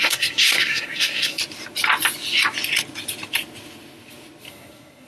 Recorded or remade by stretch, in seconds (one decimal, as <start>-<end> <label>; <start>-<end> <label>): 0.0-1.4 remade; 1.4-4.5 recorded; 4.5-5.1 remade